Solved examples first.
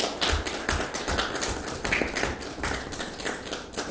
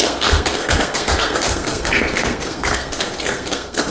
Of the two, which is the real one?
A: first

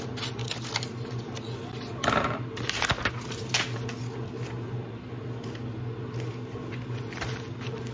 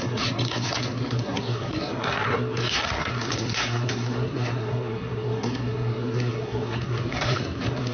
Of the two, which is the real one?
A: first